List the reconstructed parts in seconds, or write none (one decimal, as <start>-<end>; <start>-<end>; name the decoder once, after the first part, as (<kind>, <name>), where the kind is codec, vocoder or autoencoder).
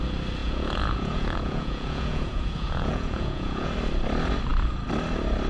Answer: 0.4-3.7 (vocoder, Vocos)